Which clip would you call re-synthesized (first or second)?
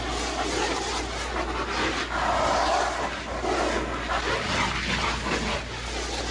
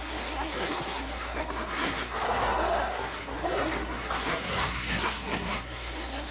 second